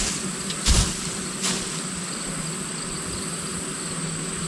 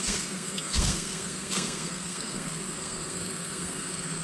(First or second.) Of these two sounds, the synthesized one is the second